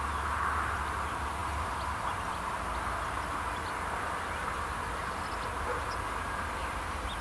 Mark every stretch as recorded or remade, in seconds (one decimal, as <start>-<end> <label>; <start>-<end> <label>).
0.0-7.2 recorded